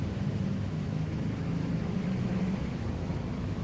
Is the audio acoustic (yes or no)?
no